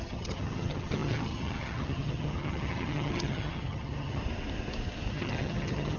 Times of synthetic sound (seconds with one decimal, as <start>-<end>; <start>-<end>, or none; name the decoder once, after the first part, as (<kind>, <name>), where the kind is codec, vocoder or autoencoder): 0.0-4.2 (vocoder, HiFi-GAN); 5.1-6.0